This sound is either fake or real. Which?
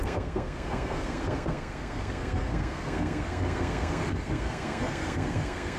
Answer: fake